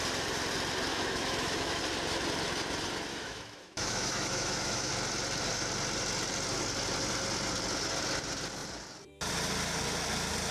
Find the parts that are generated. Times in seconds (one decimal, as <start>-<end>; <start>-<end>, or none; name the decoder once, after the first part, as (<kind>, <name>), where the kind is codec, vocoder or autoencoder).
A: 0.9-1.8 (autoencoder, DAC-VAE); 3.1-4.9